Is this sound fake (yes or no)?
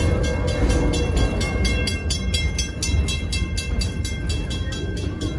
no